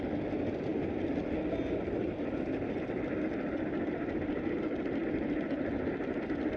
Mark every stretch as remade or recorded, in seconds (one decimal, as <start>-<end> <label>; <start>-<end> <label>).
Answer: 0.0-6.6 recorded